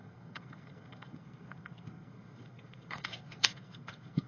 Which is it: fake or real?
fake